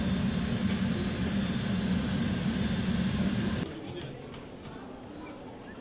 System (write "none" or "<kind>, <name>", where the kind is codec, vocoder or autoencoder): none